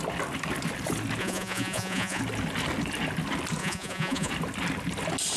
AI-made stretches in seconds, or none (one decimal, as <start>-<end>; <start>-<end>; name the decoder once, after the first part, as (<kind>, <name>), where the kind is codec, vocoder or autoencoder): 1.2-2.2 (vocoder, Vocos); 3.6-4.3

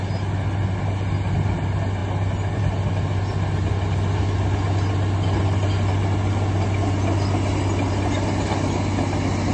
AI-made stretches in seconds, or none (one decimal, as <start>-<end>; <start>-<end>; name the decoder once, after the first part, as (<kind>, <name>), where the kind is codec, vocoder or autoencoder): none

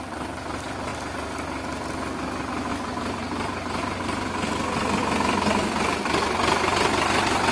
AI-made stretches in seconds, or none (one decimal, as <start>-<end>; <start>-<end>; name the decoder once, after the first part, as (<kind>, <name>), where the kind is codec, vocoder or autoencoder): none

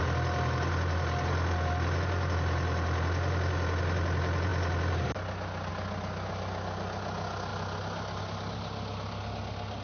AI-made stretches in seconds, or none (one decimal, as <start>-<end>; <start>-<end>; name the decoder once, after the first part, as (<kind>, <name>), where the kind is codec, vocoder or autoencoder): none